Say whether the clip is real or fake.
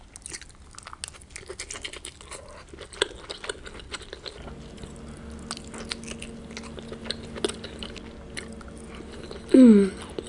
real